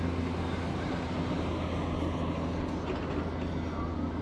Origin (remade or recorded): recorded